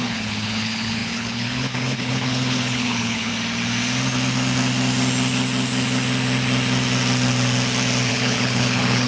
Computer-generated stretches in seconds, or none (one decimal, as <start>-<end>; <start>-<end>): 0.0-3.3; 8.1-9.1